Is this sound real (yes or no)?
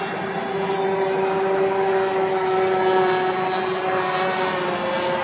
yes